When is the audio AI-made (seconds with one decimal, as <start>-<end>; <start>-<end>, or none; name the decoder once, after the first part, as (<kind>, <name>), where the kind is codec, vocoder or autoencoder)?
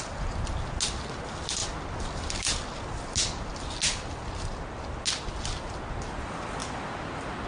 none